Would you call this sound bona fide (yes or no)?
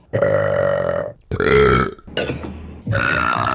yes